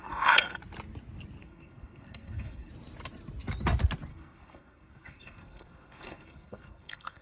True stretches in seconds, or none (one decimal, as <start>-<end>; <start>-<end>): 0.6-1.4; 2.7-4.1